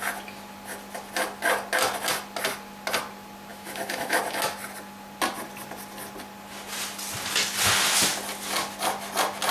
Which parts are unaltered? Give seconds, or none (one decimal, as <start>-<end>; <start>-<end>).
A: 0.0-3.5; 4.2-9.5